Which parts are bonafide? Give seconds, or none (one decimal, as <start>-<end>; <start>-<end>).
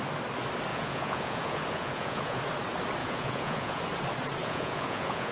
0.0-0.7; 2.4-3.0; 3.8-4.4